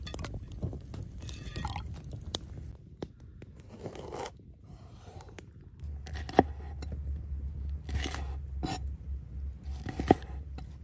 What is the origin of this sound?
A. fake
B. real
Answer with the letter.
B